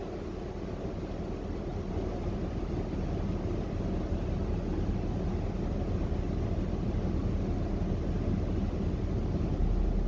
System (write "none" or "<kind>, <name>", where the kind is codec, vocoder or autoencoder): none